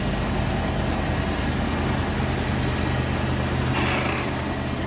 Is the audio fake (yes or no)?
no